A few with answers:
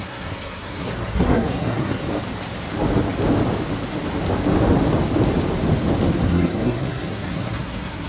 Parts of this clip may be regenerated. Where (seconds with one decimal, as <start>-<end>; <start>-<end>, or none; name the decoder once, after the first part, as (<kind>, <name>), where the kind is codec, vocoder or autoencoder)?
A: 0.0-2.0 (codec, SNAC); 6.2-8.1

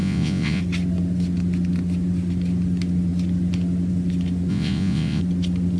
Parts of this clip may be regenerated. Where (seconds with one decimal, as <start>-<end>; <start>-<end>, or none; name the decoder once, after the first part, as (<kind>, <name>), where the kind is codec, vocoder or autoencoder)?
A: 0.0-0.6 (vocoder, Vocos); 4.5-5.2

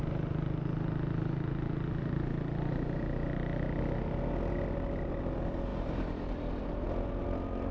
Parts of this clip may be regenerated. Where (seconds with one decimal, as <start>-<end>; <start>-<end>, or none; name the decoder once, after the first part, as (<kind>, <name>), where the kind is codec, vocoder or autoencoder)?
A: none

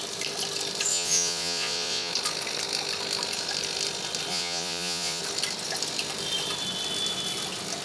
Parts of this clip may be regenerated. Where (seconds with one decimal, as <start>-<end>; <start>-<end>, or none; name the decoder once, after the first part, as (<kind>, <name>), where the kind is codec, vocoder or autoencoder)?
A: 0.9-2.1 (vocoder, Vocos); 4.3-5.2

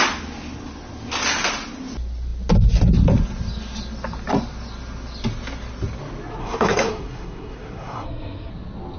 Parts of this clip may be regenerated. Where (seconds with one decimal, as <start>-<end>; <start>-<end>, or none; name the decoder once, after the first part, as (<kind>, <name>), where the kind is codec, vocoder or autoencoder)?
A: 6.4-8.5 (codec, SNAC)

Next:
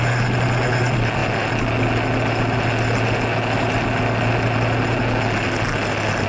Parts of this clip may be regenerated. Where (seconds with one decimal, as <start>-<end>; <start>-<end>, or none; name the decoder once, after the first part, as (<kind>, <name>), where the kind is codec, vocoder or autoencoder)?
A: none

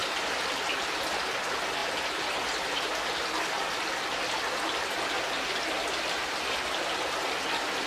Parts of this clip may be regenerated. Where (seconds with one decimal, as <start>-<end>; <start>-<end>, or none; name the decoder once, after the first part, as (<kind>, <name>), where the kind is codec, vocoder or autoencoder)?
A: 0.0-0.6 (vocoder, BigVGAN v2)

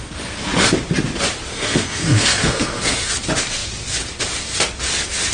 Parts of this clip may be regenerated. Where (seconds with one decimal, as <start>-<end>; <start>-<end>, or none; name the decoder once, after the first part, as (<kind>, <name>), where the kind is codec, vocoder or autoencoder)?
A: 1.5-3.1 (codec, SNAC)